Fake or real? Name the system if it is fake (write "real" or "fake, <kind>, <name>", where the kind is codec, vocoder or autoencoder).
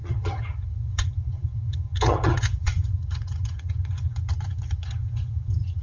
fake, vocoder, HiFi-GAN